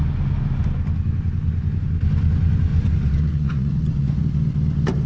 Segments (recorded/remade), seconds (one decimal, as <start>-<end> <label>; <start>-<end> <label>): 0.0-2.7 recorded; 2.7-4.2 remade; 4.2-5.1 recorded